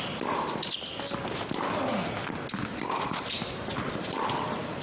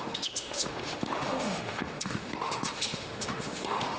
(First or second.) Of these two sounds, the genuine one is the first